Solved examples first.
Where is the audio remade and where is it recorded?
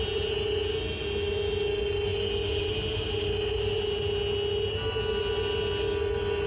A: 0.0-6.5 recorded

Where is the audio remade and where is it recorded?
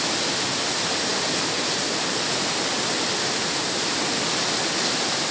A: 0.0-5.3 recorded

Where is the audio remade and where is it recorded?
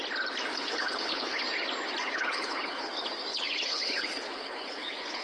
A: 0.0-0.5 recorded; 0.5-1.4 remade; 1.4-2.0 recorded; 2.0-2.9 remade; 2.9-3.3 recorded; 3.3-5.2 remade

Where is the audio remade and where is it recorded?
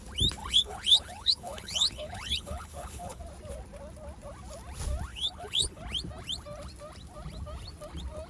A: 0.0-0.4 recorded; 0.4-3.2 remade; 3.2-5.1 recorded; 5.1-5.8 remade; 5.8-8.3 recorded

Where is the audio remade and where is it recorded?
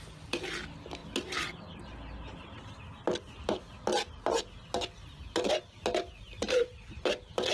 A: 0.0-7.5 recorded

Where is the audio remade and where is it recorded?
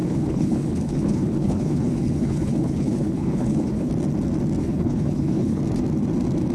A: 0.0-3.9 remade; 3.9-4.6 recorded; 4.6-5.6 remade; 5.6-6.5 recorded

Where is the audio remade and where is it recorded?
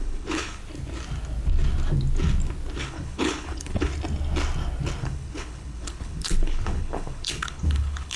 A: 0.0-0.6 remade; 0.6-2.8 recorded; 2.8-3.9 remade; 3.9-5.0 recorded; 5.0-8.2 remade